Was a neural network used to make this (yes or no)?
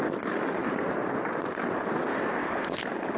no